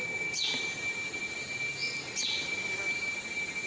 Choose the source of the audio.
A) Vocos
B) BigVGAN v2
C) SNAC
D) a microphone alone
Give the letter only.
D